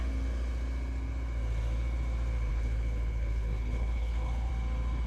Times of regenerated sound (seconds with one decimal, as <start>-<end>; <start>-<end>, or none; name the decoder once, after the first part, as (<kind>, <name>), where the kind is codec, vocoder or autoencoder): 2.5-4.5 (codec, HILCodec)